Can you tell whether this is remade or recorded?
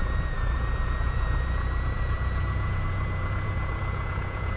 remade